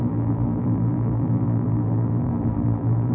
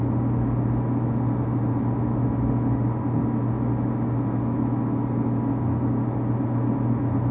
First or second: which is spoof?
first